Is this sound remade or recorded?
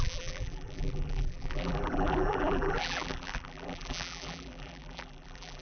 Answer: remade